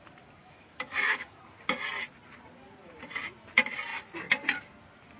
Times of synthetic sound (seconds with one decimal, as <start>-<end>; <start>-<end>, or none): 0.4-1.4